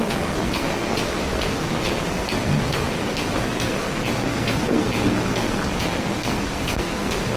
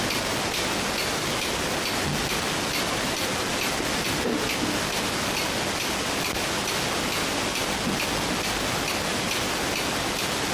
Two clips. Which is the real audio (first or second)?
second